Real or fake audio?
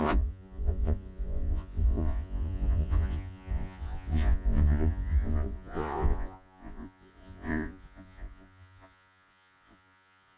fake